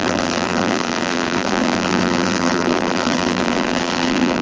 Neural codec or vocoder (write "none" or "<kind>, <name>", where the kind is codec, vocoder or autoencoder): vocoder, BigVGAN v2